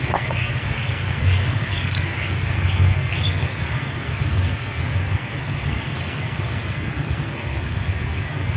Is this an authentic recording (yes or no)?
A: no